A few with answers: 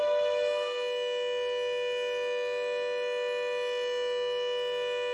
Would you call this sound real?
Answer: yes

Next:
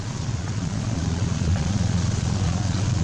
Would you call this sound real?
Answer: no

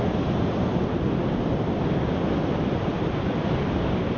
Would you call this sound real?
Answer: yes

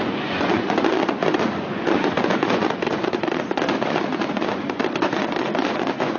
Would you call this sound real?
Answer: no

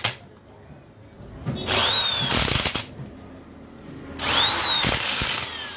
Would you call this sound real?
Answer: yes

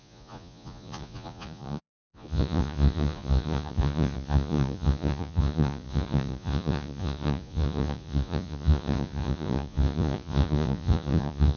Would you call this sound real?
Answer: no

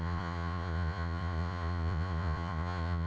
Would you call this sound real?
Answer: no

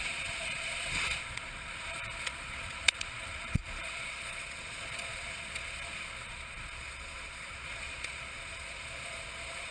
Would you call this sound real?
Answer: no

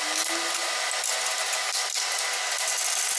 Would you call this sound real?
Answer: yes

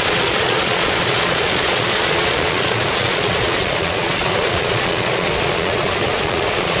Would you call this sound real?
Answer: no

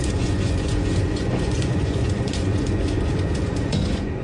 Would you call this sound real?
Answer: no